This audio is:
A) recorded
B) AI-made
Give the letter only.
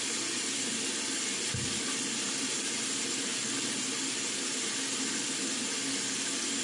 A